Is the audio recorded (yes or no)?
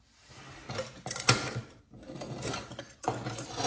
yes